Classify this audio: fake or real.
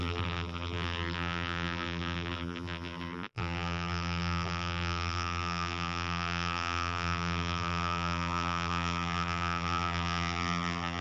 fake